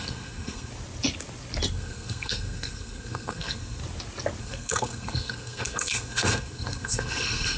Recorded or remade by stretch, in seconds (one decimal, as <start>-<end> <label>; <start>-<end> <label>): 0.0-0.7 remade; 0.7-1.7 recorded; 1.7-3.8 remade; 3.8-4.4 recorded; 4.4-7.6 remade